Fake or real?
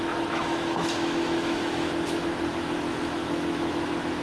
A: fake